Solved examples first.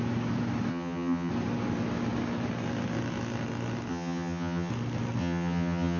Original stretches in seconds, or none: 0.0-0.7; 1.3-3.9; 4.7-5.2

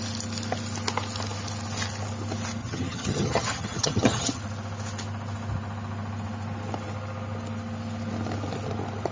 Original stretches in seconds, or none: 0.0-2.6; 4.4-9.1

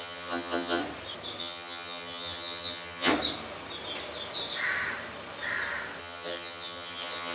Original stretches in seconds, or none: 0.8-1.4; 3.1-6.0

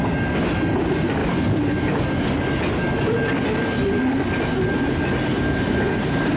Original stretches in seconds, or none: 0.0-6.4

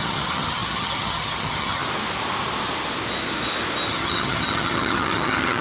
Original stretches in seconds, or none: 1.8-3.9